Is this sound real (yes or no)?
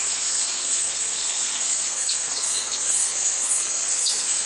no